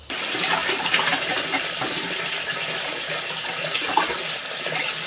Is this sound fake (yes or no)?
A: no